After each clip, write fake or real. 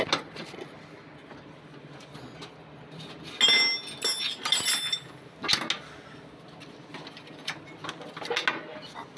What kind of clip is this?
real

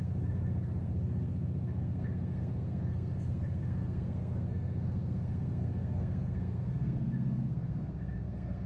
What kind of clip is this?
fake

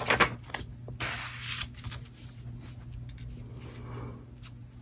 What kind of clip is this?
real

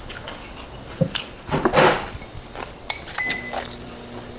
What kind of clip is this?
real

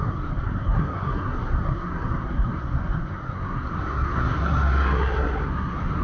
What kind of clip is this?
fake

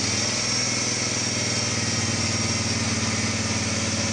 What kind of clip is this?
real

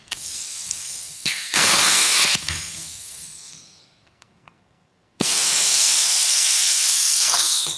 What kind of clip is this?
fake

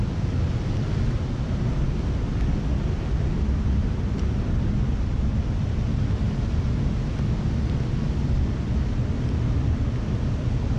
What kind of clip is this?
real